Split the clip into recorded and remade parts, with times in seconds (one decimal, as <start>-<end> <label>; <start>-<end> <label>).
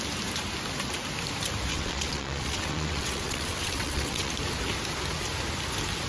0.0-1.7 recorded; 1.7-4.3 remade; 4.3-6.1 recorded